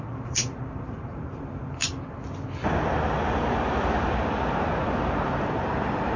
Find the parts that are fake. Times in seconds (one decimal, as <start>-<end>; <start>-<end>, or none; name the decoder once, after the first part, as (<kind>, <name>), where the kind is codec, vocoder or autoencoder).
0.0-1.8 (vocoder, BigVGAN v2); 5.5-6.2